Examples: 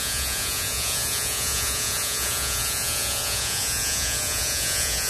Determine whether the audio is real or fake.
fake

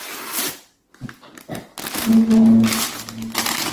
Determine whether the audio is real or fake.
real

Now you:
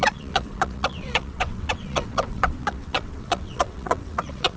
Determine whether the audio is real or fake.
fake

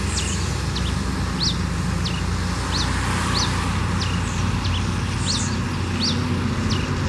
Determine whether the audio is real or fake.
real